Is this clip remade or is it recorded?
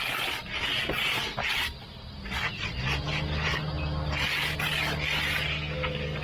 recorded